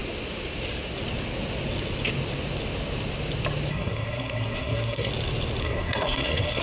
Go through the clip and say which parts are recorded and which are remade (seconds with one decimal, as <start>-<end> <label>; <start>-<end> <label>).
0.0-3.7 recorded; 3.7-5.1 remade; 5.1-5.6 recorded; 5.6-6.6 remade